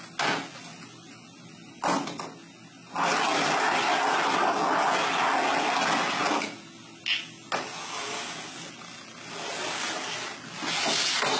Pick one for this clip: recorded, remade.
recorded